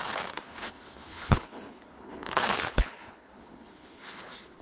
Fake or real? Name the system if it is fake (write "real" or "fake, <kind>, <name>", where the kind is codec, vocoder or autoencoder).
fake, codec, HILCodec